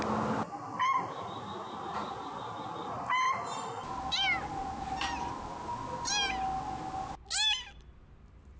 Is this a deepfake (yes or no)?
no